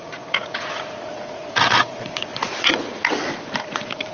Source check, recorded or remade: remade